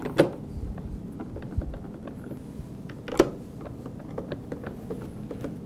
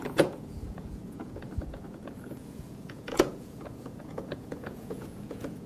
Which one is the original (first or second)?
first